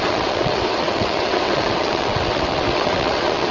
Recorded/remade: remade